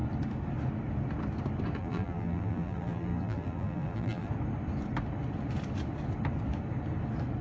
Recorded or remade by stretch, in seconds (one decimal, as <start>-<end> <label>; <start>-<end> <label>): 0.0-1.8 recorded; 1.8-4.3 remade; 4.3-7.4 recorded